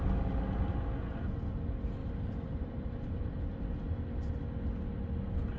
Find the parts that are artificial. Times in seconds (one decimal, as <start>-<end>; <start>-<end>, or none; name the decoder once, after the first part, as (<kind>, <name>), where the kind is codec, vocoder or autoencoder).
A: 2.0-3.4 (vocoder, BigVGAN v2)